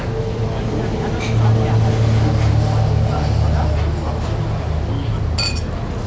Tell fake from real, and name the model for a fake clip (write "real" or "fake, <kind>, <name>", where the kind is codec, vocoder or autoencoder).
real